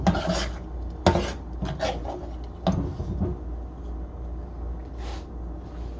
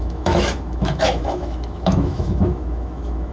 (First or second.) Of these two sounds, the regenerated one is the second